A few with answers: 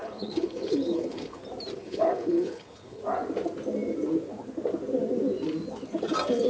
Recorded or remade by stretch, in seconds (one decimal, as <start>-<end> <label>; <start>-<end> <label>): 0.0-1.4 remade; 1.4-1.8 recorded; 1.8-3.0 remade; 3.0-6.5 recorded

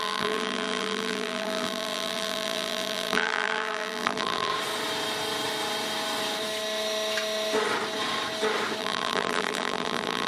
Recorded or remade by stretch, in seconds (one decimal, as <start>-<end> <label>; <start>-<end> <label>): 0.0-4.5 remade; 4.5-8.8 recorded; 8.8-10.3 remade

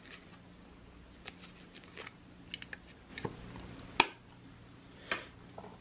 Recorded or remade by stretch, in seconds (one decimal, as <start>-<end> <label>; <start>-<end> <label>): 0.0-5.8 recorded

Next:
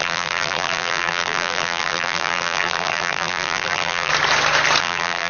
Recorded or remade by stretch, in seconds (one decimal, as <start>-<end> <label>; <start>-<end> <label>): 0.0-4.1 remade; 4.1-4.8 recorded; 4.8-5.3 remade

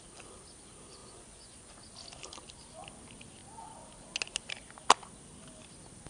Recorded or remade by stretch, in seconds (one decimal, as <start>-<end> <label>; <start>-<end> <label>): 0.0-1.0 recorded; 1.0-1.7 remade; 1.7-6.1 recorded